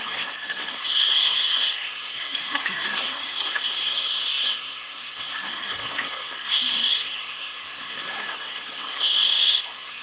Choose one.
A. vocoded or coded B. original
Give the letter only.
A